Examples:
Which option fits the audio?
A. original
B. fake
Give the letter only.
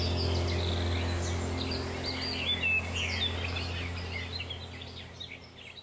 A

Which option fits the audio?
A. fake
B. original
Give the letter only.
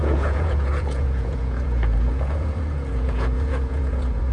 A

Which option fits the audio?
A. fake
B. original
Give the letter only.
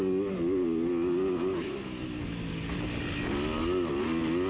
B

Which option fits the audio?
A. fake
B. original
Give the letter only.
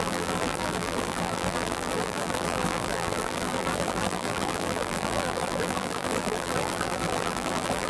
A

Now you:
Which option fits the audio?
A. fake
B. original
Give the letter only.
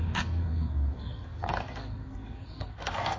A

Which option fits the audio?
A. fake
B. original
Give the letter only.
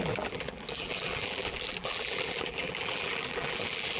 A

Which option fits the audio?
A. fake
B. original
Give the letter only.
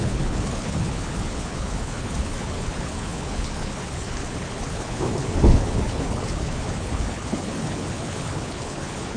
A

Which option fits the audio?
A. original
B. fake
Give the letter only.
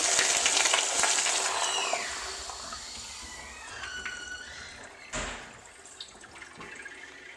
A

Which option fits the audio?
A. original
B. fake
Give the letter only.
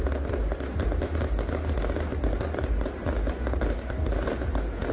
A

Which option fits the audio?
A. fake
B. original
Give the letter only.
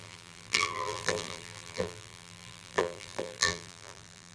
A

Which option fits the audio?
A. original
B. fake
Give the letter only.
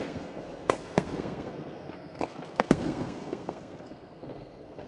B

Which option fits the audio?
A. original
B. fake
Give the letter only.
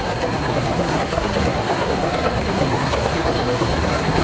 B